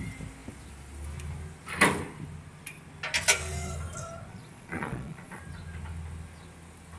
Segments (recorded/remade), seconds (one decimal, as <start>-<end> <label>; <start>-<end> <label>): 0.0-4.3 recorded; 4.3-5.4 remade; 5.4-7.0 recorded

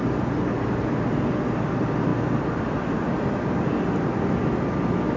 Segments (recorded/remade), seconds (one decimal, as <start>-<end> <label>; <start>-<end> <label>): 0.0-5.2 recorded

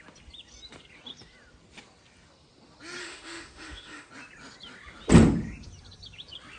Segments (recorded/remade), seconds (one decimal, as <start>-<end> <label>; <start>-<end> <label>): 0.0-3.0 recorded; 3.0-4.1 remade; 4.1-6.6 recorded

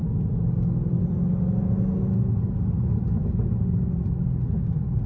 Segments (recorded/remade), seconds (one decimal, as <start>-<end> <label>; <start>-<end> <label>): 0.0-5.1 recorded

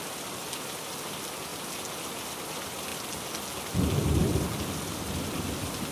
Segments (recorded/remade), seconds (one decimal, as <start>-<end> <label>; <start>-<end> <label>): 0.0-1.5 remade; 1.5-2.1 recorded; 2.1-2.9 remade; 2.9-3.9 recorded; 3.9-5.9 remade